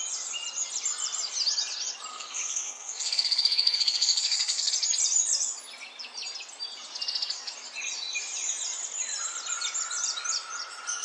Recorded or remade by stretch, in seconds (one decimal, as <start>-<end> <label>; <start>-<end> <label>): 0.0-2.1 recorded; 2.1-4.7 remade; 4.7-11.0 recorded